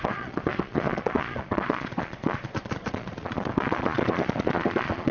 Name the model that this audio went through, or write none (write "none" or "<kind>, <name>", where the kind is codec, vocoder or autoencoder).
vocoder, Vocos